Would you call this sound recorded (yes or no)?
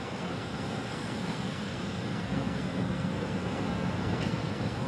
no